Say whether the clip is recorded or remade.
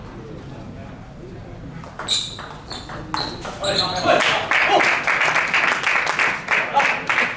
recorded